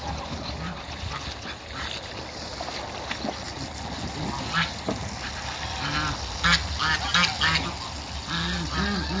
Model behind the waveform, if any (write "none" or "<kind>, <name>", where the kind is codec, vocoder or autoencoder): none